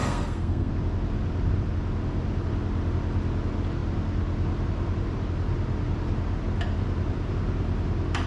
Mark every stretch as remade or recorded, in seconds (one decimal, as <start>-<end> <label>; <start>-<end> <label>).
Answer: 0.0-0.7 remade; 0.7-8.3 recorded